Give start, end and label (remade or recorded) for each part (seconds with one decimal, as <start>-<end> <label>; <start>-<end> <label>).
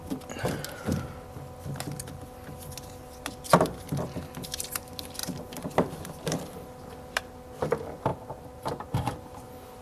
0.0-5.2 recorded; 5.2-7.2 remade; 7.2-8.1 recorded; 8.1-9.2 remade; 9.2-9.8 recorded